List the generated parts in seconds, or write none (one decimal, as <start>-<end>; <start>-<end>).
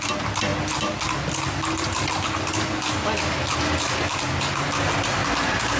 none